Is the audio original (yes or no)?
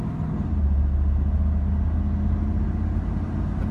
yes